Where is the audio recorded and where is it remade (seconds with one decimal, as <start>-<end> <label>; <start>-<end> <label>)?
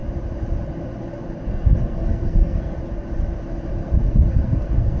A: 0.0-1.5 recorded; 1.5-2.7 remade; 2.7-3.8 recorded; 3.8-5.0 remade